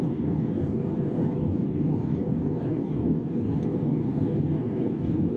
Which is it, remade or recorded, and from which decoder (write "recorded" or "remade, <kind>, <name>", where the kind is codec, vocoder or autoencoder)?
remade, codec, DAC